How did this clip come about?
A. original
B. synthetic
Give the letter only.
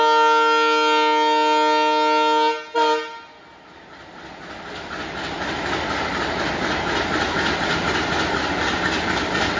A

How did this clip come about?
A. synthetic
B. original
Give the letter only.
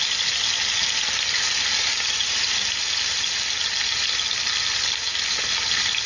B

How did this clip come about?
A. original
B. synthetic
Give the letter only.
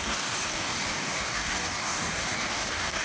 B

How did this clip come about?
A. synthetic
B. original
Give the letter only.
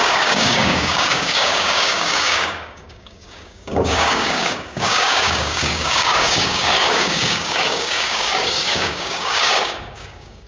A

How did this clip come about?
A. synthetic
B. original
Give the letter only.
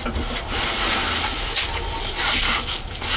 B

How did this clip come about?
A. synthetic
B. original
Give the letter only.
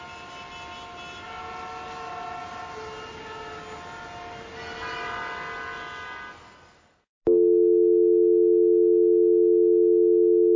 B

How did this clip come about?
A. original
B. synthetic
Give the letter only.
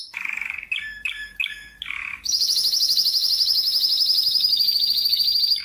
B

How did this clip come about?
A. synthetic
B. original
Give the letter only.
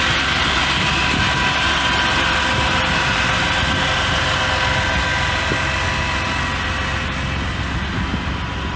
B